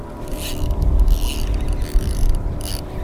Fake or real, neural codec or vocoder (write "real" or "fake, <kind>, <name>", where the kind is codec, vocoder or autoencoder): real